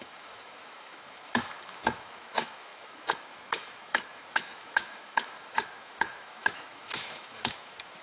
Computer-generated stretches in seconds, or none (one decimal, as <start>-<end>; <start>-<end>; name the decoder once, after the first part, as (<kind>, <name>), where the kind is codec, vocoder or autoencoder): 0.0-8.0 (autoencoder, DAC-VAE)